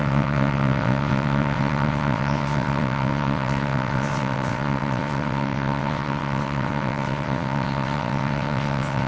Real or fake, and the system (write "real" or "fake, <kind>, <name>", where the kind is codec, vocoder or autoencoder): fake, vocoder, WaveNeXt